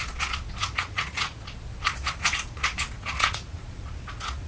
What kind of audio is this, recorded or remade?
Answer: remade